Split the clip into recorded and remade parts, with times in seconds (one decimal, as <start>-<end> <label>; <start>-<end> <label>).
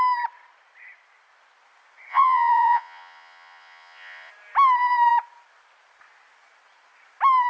0.0-2.1 recorded; 2.1-4.3 remade; 4.3-7.5 recorded